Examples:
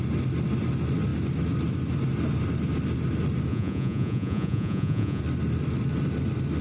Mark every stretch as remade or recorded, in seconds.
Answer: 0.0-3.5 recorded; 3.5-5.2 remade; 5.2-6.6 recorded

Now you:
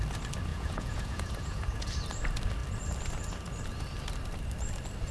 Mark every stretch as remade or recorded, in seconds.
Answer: 0.0-0.5 recorded; 0.5-1.9 remade; 1.9-5.1 recorded

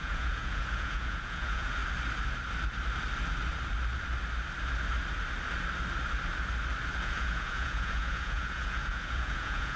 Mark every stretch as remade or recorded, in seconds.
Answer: 0.0-1.8 remade; 1.8-7.0 recorded; 7.0-9.8 remade

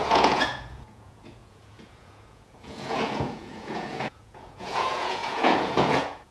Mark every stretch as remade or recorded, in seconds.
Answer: 0.0-6.3 remade